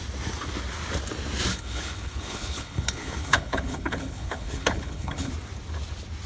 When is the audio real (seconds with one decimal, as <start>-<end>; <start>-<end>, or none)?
0.0-1.5; 5.3-6.3